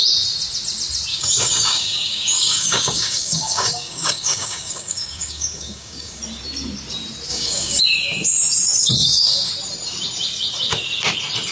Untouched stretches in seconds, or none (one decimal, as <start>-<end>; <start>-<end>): 0.0-1.1; 6.2-7.3; 7.8-8.8; 9.5-11.5